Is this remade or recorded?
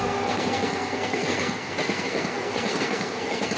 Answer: remade